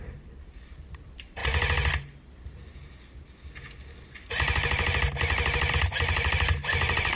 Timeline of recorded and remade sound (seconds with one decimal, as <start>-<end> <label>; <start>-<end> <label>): 0.0-1.4 remade; 1.4-5.7 recorded; 5.7-7.2 remade